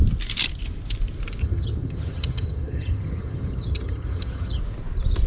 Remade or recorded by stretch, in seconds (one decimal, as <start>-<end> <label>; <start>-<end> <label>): 0.0-1.4 recorded; 1.4-4.6 remade; 4.6-5.3 recorded

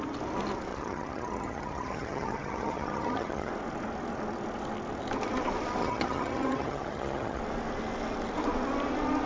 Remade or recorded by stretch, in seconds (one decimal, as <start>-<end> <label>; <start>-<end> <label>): 0.0-0.7 recorded; 0.7-3.5 remade; 3.5-5.8 recorded; 5.8-7.4 remade; 7.4-9.3 recorded

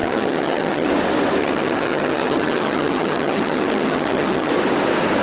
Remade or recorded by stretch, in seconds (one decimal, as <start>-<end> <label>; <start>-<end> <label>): 0.0-0.9 remade; 0.9-1.4 recorded; 1.4-4.5 remade; 4.5-5.2 recorded

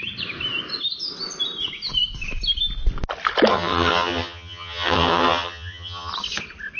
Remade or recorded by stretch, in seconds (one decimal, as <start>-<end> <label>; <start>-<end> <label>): 0.0-3.5 recorded; 3.5-6.1 remade; 6.1-6.8 recorded

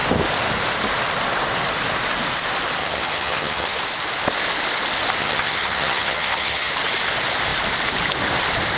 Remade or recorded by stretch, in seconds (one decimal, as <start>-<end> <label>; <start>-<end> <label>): 0.0-2.8 recorded; 2.8-3.8 remade; 3.8-5.2 recorded; 5.2-6.7 remade; 6.7-8.8 recorded

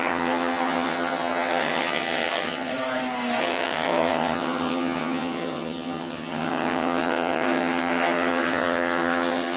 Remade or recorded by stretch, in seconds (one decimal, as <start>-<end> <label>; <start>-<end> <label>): 0.0-2.7 remade; 2.7-3.4 recorded; 3.4-9.6 remade

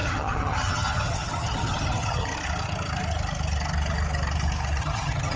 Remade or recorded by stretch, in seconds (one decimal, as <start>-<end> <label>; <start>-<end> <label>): 0.0-2.3 remade; 2.3-4.8 recorded; 4.8-5.4 remade

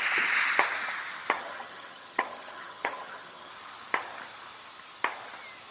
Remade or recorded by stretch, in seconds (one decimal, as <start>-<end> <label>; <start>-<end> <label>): 0.0-1.4 recorded; 1.4-3.5 remade; 3.5-5.7 recorded